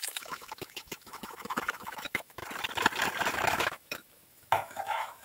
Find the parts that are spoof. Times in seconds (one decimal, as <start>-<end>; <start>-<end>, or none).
0.0-2.4; 3.5-5.2